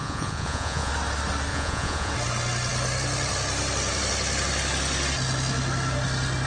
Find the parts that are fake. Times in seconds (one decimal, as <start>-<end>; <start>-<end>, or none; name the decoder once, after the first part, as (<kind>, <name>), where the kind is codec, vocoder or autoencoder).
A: 0.0-0.9 (vocoder, Vocos); 1.5-2.1